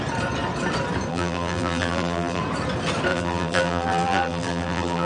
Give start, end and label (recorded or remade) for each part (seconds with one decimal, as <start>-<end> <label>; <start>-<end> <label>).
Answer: 0.0-1.1 recorded; 1.1-2.4 remade; 2.4-3.1 recorded; 3.1-5.1 remade